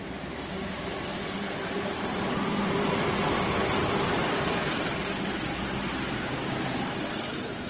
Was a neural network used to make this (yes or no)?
yes